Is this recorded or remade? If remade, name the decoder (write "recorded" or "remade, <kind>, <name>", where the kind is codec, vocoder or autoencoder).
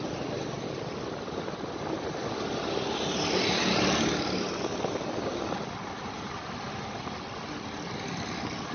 recorded